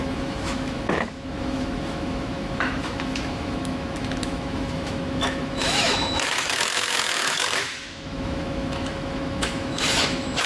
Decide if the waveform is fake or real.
fake